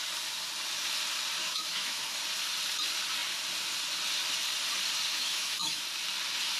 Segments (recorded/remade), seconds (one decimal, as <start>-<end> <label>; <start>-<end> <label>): 0.0-1.4 recorded; 1.4-2.2 remade; 2.2-5.1 recorded; 5.1-5.8 remade; 5.8-6.6 recorded